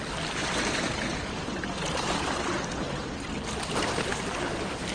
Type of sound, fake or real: real